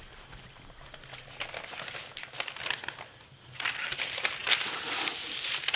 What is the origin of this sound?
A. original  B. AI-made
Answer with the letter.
A